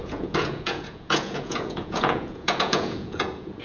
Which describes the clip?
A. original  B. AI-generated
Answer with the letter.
B